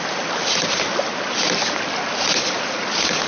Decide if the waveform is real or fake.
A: real